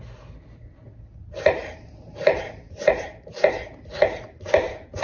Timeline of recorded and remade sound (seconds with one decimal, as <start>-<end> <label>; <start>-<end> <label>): 0.0-5.0 recorded